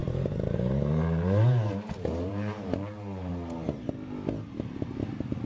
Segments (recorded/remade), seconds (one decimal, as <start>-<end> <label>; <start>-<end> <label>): 0.0-3.3 remade; 3.3-5.5 recorded